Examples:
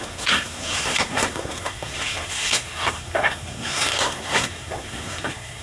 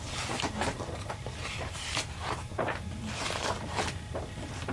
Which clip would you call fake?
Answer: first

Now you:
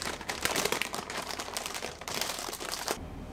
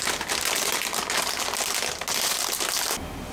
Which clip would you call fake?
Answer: first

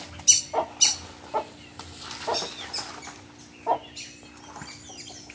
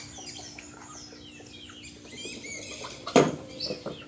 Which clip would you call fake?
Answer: second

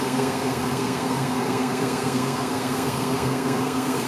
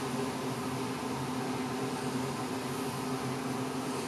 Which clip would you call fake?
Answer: first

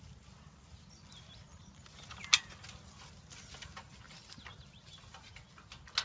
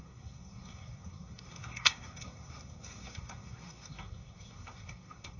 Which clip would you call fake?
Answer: second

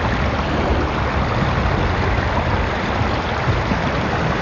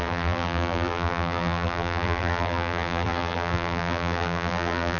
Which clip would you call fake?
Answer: second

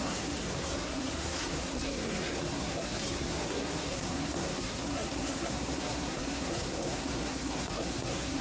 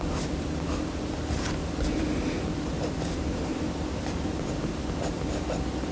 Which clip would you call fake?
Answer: first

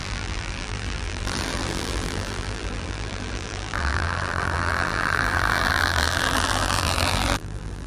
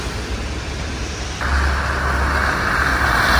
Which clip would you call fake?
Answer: first